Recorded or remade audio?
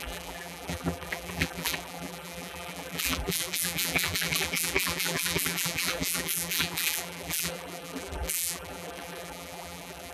remade